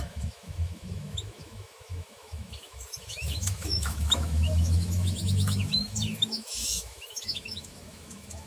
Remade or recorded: remade